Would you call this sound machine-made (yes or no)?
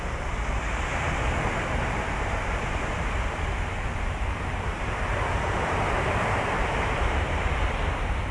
yes